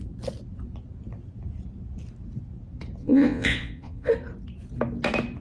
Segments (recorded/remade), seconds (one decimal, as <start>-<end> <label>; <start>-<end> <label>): 0.0-3.0 recorded; 3.0-4.1 remade; 4.1-5.4 recorded